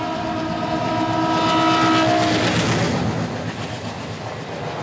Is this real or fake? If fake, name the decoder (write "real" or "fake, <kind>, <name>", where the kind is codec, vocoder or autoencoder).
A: real